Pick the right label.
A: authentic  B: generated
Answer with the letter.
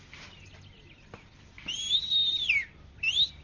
A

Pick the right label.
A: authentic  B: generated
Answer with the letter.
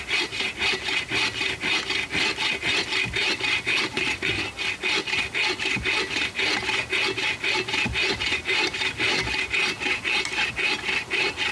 A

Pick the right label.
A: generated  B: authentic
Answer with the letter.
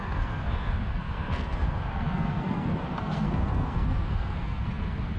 A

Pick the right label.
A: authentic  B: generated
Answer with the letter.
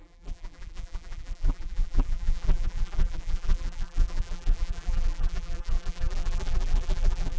B